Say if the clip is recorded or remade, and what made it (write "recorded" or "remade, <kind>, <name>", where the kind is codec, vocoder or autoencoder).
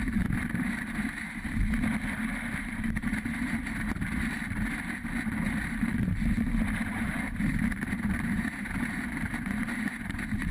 remade, vocoder, BigVGAN v2